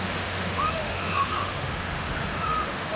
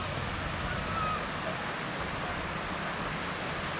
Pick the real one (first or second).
second